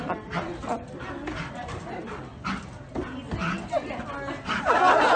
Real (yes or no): yes